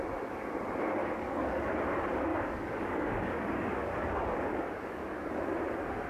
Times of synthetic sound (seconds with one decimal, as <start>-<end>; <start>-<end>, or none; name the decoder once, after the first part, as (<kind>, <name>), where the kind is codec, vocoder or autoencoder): 1.0-1.6 (codec, DAC); 2.3-5.3